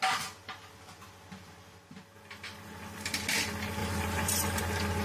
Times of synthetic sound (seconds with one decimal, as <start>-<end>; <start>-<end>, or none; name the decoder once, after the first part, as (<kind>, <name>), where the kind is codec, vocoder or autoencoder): 3.8-4.6 (vocoder, BigVGAN v2)